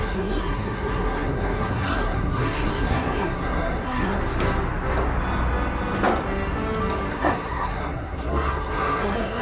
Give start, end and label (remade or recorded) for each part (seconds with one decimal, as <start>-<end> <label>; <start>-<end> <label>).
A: 0.0-4.2 remade; 4.2-7.1 recorded; 7.1-9.4 remade